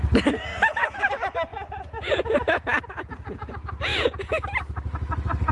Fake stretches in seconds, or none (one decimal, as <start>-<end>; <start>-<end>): 0.5-1.1; 1.5-3.5; 3.9-4.4